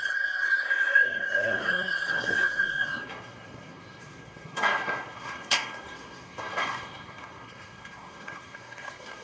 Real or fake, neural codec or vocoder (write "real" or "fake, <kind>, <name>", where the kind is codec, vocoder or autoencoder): fake, codec, SNAC